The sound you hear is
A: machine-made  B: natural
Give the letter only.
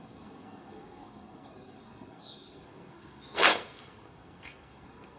A